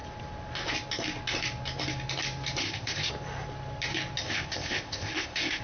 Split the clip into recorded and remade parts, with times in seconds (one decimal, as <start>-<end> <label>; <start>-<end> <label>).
0.0-2.6 recorded; 2.6-3.1 remade; 3.1-4.2 recorded; 4.2-5.6 remade